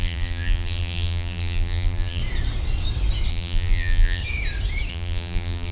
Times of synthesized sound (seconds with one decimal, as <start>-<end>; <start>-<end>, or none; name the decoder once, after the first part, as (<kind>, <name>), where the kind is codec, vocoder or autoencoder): 0.0-2.2 (vocoder, BigVGAN v2); 3.3-4.2; 4.9-5.7